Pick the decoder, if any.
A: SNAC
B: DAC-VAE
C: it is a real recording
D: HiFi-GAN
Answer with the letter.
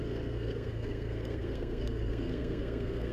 A